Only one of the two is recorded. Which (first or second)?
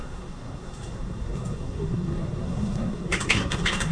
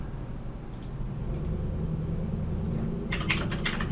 second